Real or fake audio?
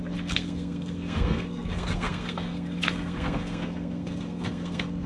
fake